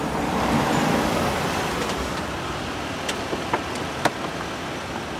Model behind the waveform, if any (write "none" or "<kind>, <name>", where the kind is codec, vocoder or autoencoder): none